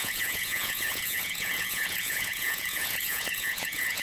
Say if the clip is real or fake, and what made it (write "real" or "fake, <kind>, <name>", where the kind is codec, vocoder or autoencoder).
fake, vocoder, Vocos